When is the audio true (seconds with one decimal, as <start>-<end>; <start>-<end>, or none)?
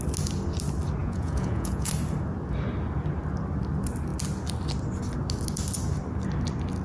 0.0-1.0; 1.9-6.8